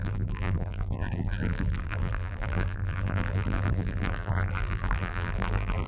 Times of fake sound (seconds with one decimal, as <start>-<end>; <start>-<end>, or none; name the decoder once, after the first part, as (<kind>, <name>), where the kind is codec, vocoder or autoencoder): 0.0-5.9 (vocoder, BigVGAN v2)